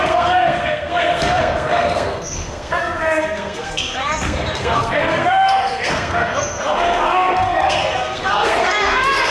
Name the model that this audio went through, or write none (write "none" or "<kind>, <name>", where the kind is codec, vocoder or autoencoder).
codec, SNAC